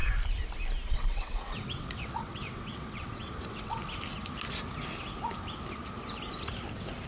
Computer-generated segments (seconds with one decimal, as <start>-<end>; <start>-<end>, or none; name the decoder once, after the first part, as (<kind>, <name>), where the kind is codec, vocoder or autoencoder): 0.9-3.8 (vocoder, WaveNeXt)